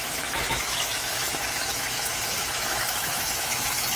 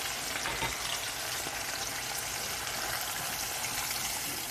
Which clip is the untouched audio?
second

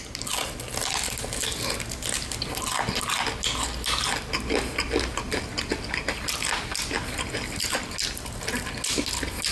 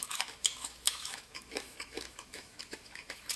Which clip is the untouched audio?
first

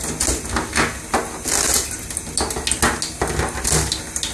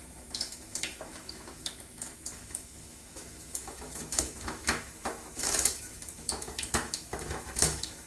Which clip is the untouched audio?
first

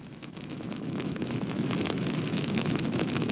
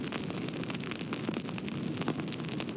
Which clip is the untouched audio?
second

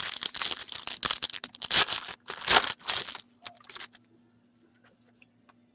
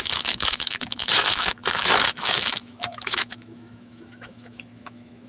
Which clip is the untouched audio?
first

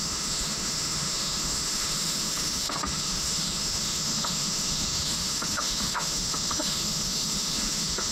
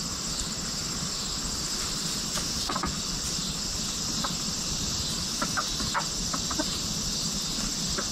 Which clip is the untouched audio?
second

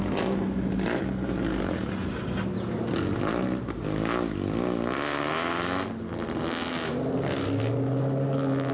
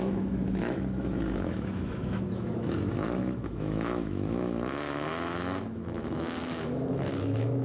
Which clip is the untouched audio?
first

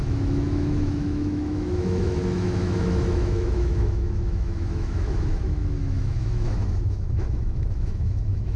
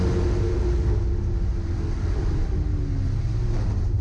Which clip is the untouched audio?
second